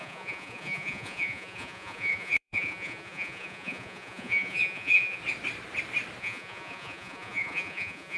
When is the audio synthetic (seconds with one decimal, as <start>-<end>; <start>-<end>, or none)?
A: 0.0-5.2; 6.2-8.2